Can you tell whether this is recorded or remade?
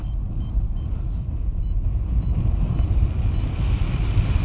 recorded